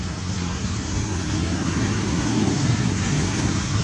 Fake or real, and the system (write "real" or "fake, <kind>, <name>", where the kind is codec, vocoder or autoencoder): fake, codec, SNAC